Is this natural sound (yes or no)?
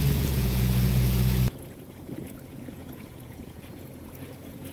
no